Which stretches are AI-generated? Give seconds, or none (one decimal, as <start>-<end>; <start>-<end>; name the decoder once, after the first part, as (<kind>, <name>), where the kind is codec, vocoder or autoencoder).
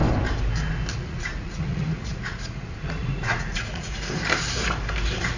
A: 0.9-4.1 (vocoder, Vocos)